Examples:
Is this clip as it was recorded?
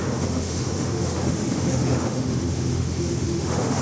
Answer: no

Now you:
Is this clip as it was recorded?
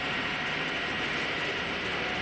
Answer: yes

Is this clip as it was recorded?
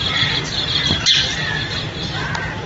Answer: yes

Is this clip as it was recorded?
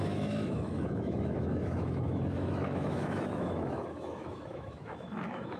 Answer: no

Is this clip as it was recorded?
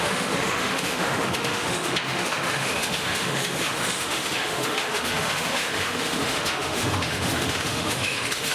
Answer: no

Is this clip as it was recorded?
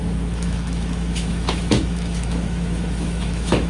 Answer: no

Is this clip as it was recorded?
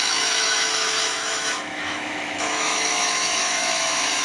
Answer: no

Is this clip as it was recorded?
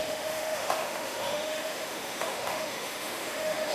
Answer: no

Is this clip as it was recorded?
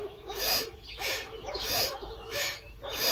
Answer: no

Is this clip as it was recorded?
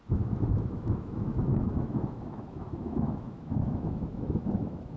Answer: no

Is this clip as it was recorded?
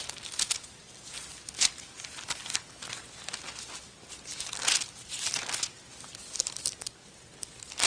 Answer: yes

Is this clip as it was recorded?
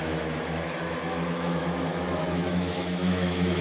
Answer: no